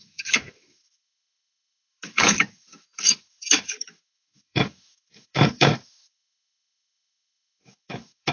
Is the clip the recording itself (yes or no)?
no